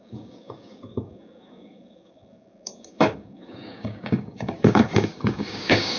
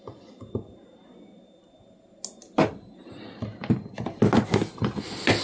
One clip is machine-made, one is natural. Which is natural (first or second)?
second